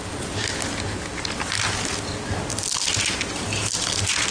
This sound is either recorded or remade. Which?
recorded